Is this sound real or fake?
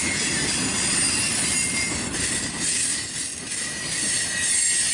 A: real